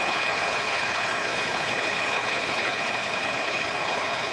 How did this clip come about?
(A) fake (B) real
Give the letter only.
A